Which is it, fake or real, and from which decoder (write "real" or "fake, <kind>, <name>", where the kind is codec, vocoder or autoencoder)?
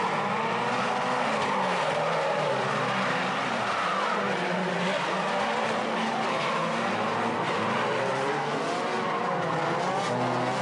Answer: real